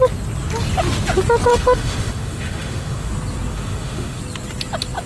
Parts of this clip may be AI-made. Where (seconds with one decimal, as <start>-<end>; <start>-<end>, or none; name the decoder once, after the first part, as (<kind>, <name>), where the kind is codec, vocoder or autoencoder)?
1.5-3.1 (autoencoder, DAC-VAE); 3.5-4.2